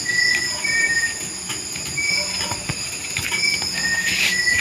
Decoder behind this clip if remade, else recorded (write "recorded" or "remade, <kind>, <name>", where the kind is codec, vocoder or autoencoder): recorded